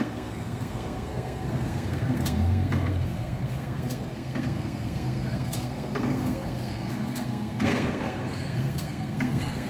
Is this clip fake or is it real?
fake